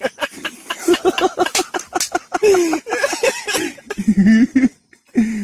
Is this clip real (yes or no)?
yes